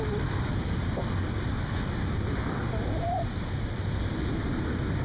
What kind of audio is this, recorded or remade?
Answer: recorded